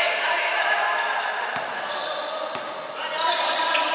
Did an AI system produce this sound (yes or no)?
no